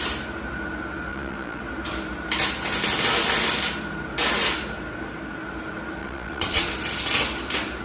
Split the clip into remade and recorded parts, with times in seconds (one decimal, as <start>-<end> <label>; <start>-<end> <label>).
0.0-1.1 recorded; 1.1-1.6 remade; 1.6-6.0 recorded; 6.0-6.7 remade; 6.7-7.8 recorded